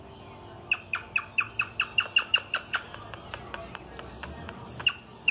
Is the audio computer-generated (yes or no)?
no